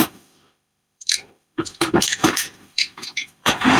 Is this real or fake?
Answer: fake